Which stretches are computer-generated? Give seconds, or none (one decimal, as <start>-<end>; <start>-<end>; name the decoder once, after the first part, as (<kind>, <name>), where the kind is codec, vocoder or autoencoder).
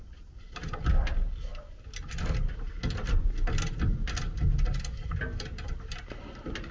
none